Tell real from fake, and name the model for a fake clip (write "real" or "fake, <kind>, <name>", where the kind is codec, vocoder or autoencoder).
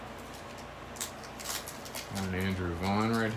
real